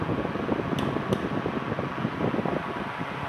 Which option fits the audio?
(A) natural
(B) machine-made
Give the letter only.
A